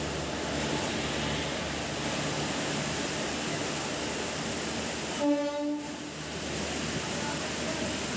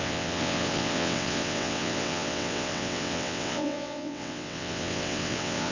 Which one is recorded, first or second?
first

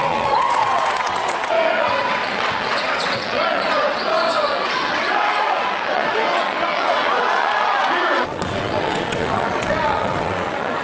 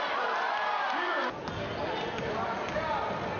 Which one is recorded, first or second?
second